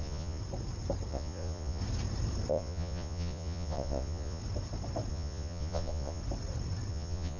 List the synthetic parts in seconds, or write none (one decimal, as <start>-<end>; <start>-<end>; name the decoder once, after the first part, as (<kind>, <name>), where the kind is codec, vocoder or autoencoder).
0.0-0.4 (vocoder, Vocos); 1.1-1.8; 2.5-4.4; 5.1-6.2; 6.9-7.4